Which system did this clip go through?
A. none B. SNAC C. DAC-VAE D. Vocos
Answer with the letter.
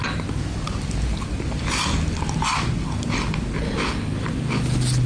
A